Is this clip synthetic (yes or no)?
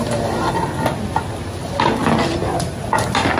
no